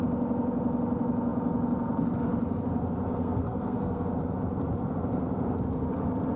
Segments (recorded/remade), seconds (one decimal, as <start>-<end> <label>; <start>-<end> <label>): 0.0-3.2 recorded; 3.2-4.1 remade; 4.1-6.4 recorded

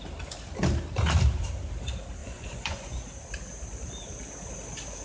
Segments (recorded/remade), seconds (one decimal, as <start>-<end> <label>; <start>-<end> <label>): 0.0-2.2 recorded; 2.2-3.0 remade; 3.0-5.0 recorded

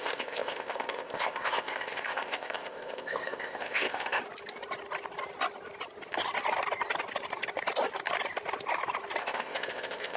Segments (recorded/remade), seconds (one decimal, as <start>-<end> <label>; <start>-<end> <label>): 0.0-4.2 remade; 4.2-9.2 recorded; 9.2-10.2 remade

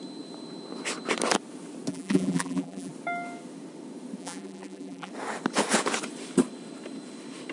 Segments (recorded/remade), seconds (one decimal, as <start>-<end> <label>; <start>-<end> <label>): 0.0-1.9 recorded; 1.9-2.9 remade; 2.9-4.2 recorded; 4.2-5.1 remade; 5.1-7.5 recorded

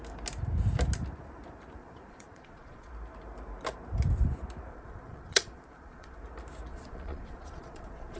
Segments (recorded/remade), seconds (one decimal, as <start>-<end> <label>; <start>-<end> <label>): 0.0-1.8 recorded; 1.8-2.9 remade; 2.9-4.7 recorded; 4.7-6.2 remade; 6.2-6.7 recorded; 6.7-8.2 remade

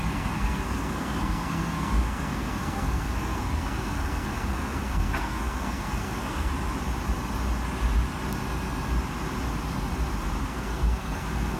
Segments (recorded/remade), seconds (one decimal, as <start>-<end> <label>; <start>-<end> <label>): 0.0-6.5 remade; 6.5-10.4 recorded; 10.4-11.6 remade

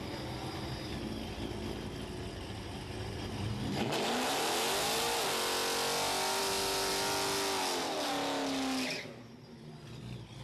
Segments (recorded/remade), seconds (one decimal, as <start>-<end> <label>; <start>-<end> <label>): 0.0-10.4 recorded

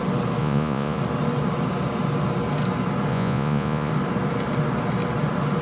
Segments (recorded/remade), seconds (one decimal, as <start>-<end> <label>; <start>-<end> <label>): 0.0-0.4 recorded; 0.4-1.0 remade; 1.0-3.1 recorded; 3.1-3.9 remade; 3.9-5.6 recorded